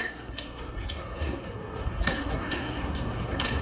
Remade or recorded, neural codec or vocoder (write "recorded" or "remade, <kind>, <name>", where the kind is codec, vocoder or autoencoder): remade, codec, SNAC